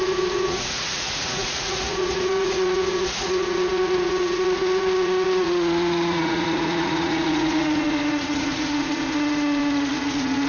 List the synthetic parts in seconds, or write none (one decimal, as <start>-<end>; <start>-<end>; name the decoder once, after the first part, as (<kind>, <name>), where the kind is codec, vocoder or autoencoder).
0.0-10.5 (vocoder, Vocos)